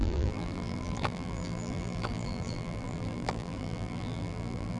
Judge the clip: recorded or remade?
remade